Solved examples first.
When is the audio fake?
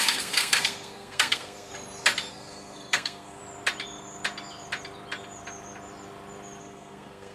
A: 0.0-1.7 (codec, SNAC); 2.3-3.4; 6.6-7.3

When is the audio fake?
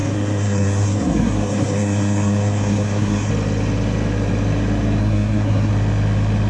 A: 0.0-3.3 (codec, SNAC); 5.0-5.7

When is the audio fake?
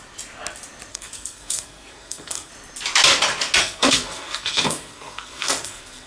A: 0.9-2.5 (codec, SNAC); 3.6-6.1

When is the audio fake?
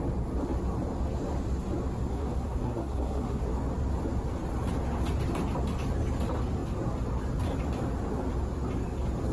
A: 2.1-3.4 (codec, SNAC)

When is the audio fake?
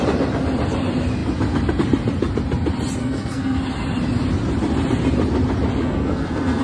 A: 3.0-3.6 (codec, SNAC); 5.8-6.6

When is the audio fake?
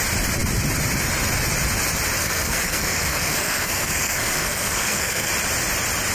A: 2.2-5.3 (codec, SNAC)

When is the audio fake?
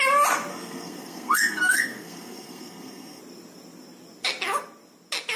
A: 0.5-3.2 (codec, SNAC)